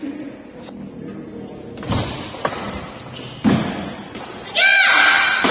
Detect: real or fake real